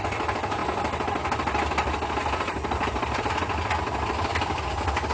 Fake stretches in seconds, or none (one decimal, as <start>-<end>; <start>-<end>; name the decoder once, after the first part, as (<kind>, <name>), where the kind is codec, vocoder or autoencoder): none